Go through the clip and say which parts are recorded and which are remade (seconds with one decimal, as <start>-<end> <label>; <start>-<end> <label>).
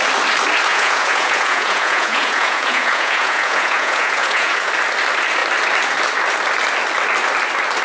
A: 0.0-0.7 recorded; 0.7-4.7 remade; 4.7-7.8 recorded